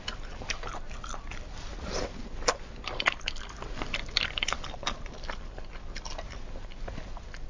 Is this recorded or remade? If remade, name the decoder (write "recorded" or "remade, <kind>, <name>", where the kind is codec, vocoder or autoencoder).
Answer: recorded